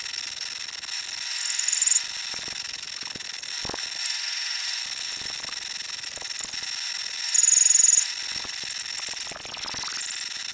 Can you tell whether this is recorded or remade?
recorded